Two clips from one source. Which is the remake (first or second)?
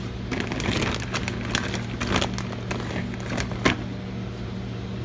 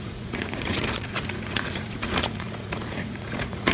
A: second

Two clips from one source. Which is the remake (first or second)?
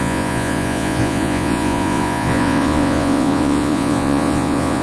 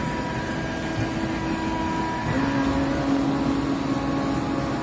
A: first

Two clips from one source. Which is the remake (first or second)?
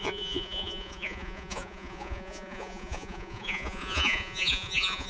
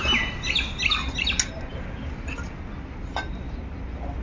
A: first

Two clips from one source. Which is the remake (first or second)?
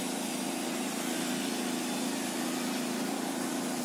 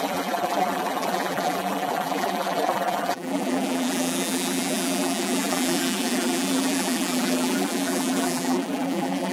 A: second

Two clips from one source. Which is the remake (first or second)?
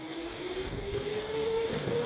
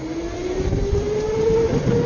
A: first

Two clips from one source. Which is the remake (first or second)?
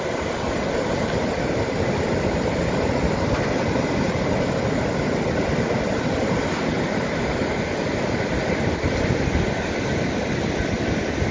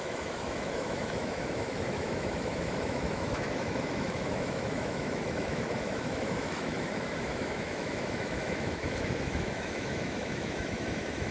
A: second